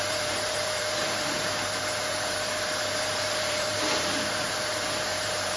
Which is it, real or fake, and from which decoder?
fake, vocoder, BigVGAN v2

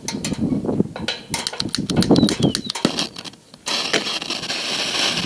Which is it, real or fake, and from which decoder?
real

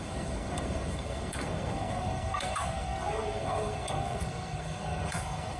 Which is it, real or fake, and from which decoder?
fake, codec, SNAC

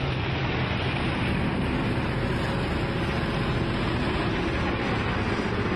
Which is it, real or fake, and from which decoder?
real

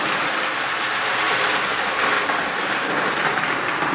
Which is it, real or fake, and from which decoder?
real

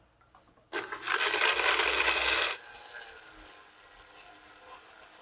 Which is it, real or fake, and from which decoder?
real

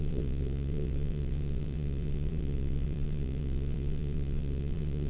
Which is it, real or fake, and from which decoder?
fake, vocoder, WaveNeXt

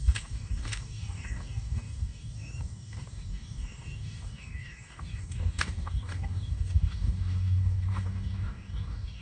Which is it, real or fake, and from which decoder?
fake, codec, DAC